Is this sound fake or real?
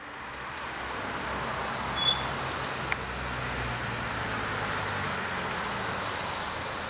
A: real